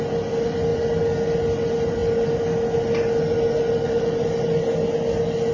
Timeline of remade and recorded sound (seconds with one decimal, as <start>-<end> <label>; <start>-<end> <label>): 0.0-5.5 recorded